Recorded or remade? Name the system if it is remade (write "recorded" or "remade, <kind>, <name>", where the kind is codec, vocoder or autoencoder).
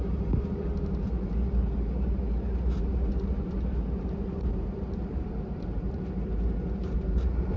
remade, vocoder, BigVGAN v2